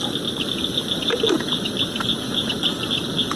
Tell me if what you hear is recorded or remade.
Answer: recorded